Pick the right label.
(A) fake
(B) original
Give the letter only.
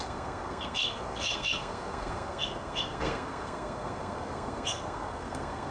A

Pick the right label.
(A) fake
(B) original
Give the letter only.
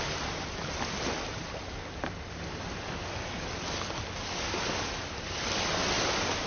B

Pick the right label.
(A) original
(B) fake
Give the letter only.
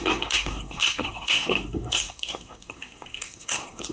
B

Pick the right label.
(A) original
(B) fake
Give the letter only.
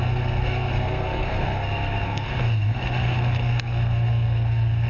B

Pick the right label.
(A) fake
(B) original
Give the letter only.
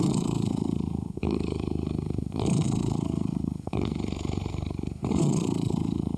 A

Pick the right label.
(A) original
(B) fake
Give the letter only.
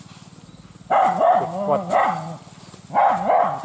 A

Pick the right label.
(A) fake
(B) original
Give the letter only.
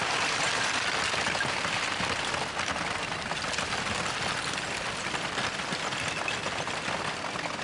B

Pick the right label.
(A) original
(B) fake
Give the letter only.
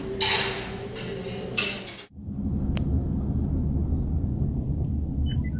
A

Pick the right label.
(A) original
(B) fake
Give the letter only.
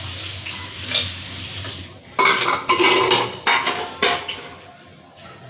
A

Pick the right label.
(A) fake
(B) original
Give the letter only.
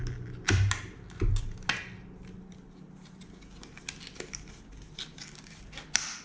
B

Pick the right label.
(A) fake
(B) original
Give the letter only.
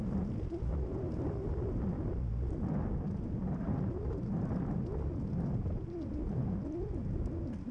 B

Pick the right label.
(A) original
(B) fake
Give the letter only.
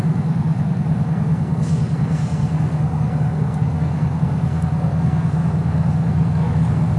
B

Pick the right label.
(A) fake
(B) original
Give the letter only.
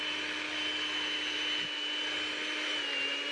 B